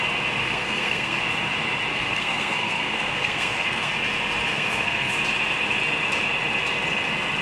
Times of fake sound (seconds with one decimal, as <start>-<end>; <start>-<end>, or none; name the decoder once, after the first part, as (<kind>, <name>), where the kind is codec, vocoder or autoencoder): 0.4-1.2 (codec, SNAC); 1.9-3.9; 4.5-5.1